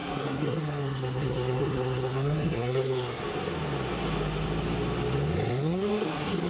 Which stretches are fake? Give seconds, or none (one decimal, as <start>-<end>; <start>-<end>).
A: 0.0-3.2; 5.5-6.5